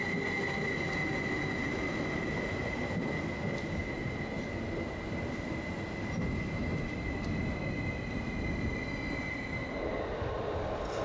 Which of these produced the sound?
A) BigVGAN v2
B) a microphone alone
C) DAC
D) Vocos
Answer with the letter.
B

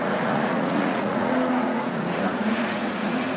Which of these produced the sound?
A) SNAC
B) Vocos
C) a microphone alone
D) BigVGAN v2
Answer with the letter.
B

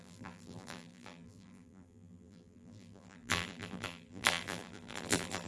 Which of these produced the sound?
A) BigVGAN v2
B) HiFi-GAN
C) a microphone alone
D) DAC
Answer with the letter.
A